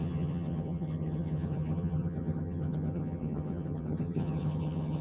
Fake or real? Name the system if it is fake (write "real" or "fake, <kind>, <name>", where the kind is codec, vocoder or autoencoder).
fake, vocoder, HiFi-GAN